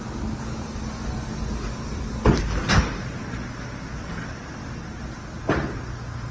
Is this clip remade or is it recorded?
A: recorded